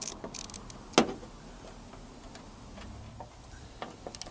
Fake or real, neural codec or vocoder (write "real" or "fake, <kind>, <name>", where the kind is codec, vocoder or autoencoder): real